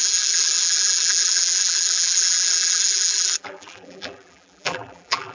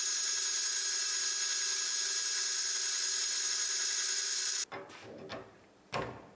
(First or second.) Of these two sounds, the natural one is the second